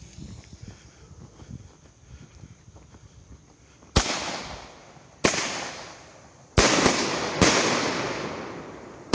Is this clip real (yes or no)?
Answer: no